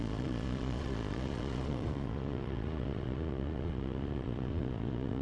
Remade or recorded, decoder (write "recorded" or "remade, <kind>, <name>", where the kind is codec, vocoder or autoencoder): remade, vocoder, Vocos